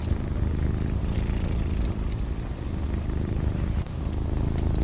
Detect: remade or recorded recorded